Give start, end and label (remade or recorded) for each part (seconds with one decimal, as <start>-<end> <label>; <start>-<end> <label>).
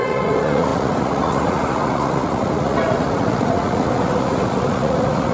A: 0.0-5.3 remade